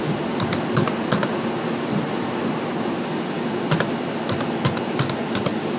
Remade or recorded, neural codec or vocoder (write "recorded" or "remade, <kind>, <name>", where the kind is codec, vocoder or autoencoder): recorded